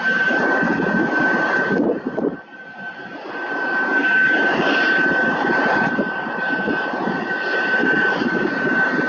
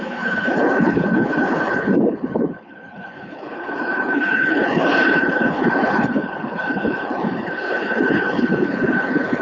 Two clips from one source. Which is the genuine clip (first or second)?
first